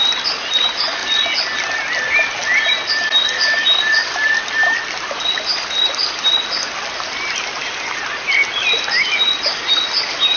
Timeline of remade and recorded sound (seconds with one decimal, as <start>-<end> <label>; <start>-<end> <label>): 0.0-10.4 recorded